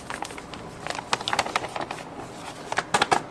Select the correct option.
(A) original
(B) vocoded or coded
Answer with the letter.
A